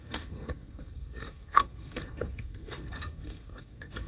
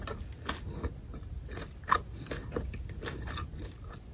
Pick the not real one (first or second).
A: first